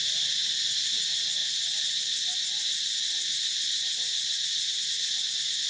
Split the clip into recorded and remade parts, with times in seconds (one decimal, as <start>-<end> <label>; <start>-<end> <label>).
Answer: 0.0-1.4 recorded; 1.4-4.8 remade; 4.8-5.7 recorded